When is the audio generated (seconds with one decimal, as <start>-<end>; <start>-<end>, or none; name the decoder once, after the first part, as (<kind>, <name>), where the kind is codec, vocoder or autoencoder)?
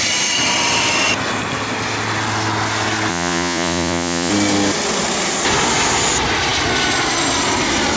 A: 3.1-4.3 (vocoder, Vocos)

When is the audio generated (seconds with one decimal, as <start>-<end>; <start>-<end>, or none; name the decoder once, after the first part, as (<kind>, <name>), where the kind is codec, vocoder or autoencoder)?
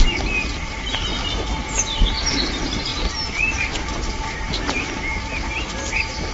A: none